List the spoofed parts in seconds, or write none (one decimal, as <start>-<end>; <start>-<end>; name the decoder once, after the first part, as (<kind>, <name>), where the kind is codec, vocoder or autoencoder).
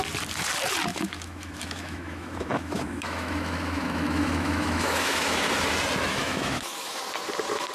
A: 0.9-5.5 (autoencoder, DAC-VAE); 6.1-7.0